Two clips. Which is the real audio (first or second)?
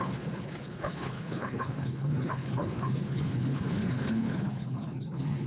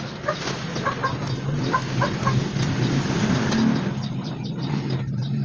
second